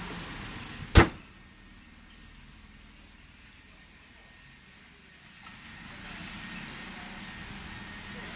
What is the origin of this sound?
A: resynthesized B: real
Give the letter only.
B